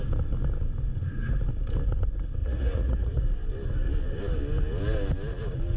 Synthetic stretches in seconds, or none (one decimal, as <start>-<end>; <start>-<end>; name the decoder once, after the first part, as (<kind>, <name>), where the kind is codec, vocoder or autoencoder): 2.4-3.2 (vocoder, Vocos)